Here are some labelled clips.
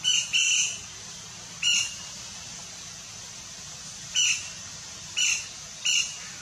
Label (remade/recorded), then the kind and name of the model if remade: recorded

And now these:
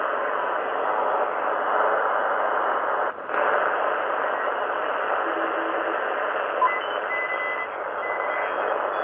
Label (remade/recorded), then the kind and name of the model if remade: recorded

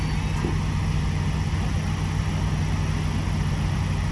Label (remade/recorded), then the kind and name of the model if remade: recorded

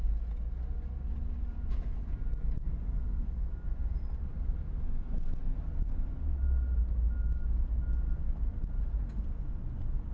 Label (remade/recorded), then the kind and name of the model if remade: recorded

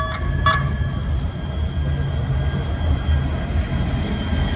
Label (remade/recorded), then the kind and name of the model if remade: recorded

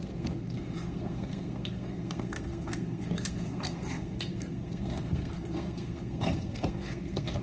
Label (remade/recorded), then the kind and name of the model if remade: remade, codec, SNAC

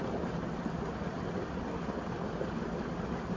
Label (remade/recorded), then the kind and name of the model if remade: recorded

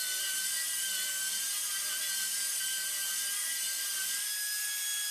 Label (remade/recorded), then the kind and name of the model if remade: recorded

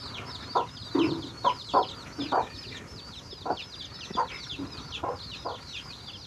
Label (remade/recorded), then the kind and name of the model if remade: recorded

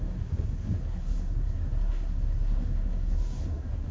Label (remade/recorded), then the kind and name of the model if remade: remade, codec, SNAC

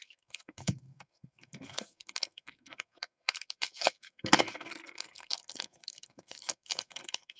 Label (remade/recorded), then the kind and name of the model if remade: remade, codec, SNAC